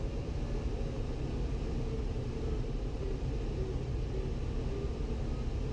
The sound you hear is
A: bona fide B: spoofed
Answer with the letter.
A